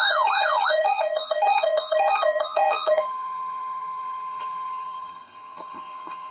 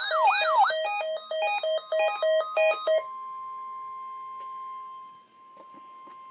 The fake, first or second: first